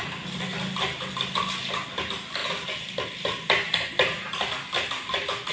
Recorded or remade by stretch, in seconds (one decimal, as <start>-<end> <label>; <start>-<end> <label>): 0.0-5.5 recorded